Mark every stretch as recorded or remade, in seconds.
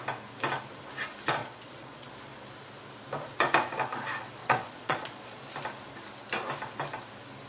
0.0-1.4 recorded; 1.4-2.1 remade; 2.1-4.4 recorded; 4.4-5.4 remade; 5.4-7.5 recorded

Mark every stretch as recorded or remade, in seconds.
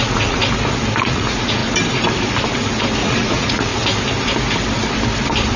0.0-0.4 remade; 0.4-1.0 recorded; 1.0-1.6 remade; 1.6-3.0 recorded; 3.0-3.7 remade; 3.7-5.6 recorded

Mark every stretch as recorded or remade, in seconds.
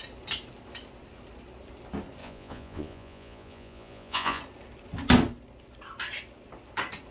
0.0-2.2 recorded; 2.2-4.4 remade; 4.4-7.1 recorded